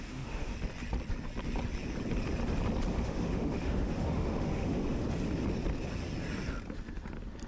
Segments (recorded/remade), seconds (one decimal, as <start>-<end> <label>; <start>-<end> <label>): 0.0-0.5 remade; 0.5-2.9 recorded; 2.9-5.0 remade; 5.0-7.5 recorded